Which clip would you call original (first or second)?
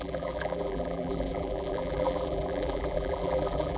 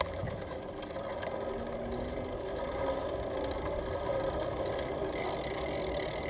second